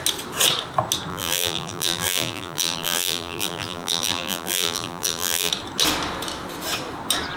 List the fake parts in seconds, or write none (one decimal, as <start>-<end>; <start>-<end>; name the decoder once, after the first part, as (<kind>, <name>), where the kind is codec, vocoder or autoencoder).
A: 1.1-5.5 (vocoder, BigVGAN v2)